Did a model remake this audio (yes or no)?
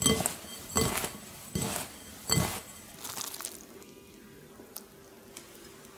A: no